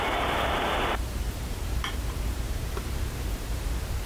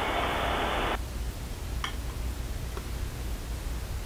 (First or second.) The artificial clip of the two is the first